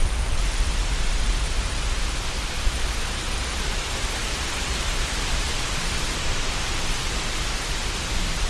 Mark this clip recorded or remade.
remade